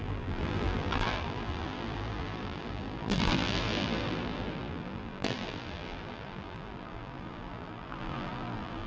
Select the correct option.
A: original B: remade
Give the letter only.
B